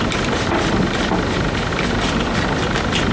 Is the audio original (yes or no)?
yes